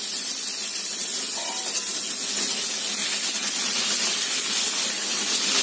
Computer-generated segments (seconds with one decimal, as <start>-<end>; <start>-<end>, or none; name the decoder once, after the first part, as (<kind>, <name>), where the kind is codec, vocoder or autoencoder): none